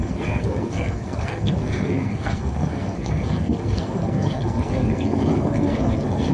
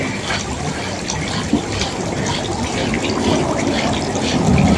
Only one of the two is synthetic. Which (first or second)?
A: first